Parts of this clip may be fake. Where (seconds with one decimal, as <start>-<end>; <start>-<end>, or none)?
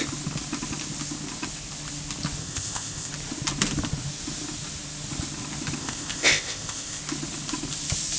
2.4-3.1; 5.8-7.0